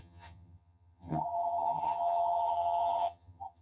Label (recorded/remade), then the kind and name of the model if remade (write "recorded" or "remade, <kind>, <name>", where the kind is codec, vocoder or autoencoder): remade, vocoder, HiFi-GAN